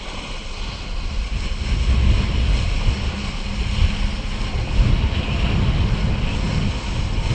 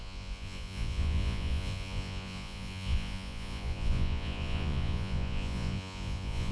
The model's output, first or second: second